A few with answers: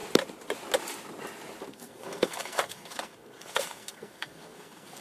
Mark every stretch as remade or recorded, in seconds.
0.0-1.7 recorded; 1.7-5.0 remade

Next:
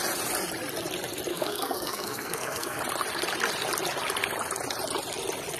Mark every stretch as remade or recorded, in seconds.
0.0-1.3 recorded; 1.3-2.8 remade; 2.8-5.6 recorded

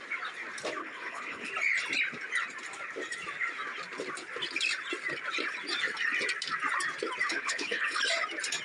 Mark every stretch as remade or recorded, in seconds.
0.0-0.8 recorded; 0.8-1.5 remade; 1.5-7.3 recorded; 7.3-8.0 remade; 8.0-8.6 recorded

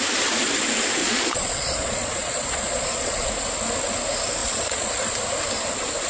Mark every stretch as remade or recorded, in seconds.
0.0-1.0 recorded; 1.0-3.3 remade; 3.3-4.4 recorded; 4.4-4.9 remade; 4.9-6.1 recorded

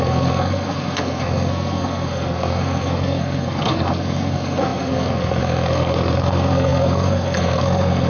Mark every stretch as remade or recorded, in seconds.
0.0-8.1 remade